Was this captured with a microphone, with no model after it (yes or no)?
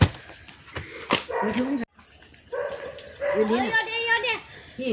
yes